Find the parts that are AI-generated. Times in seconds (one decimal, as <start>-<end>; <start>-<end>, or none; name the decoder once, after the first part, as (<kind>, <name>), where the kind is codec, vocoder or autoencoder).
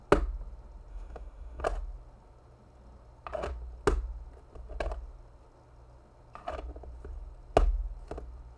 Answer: 0.9-1.6 (autoencoder, DAC-VAE)